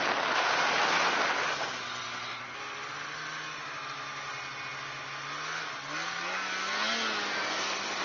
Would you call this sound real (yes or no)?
yes